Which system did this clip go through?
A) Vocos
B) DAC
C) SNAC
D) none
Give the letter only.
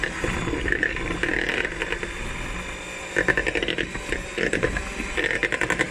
D